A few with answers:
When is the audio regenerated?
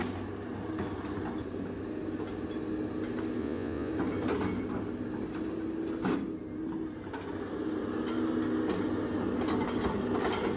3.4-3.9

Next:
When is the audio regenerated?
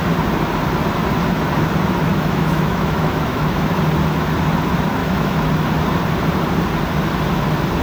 2.1-3.8; 5.0-5.5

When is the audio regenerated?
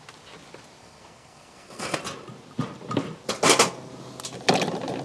0.8-2.0